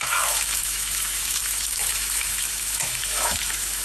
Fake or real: fake